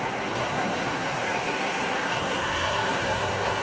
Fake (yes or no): yes